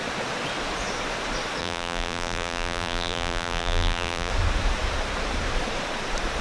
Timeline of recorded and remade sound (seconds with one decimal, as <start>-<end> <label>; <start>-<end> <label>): 0.0-1.6 recorded; 1.6-4.3 remade; 4.3-6.4 recorded